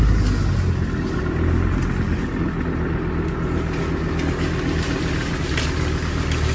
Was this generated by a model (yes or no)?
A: no